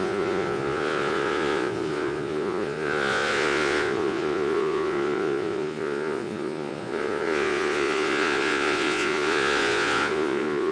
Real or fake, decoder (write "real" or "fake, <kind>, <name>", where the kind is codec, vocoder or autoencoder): fake, vocoder, Vocos